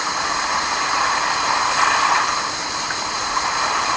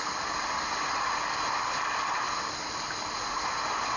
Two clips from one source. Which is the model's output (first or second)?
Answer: first